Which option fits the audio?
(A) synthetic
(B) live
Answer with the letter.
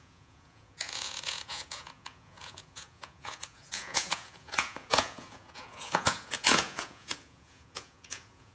A